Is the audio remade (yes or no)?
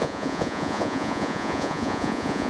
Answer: yes